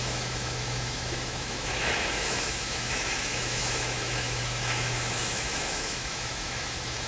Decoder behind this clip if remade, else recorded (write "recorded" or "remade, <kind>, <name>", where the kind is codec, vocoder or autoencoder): remade, autoencoder, DAC-VAE